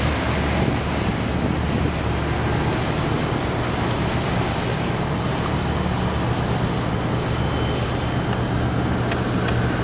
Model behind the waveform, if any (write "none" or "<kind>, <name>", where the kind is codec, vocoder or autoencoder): none